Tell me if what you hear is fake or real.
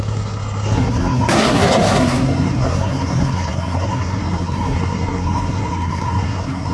fake